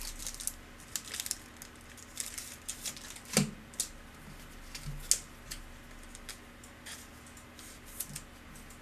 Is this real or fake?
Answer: real